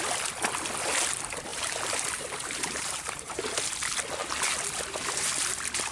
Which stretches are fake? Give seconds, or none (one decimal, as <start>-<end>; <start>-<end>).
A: 1.5-3.4